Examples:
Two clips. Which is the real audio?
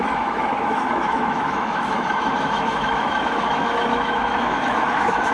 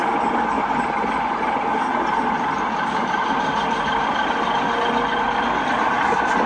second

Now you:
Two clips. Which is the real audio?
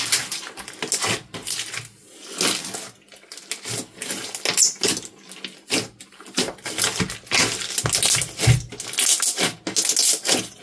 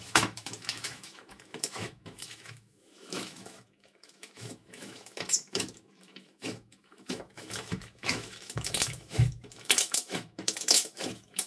first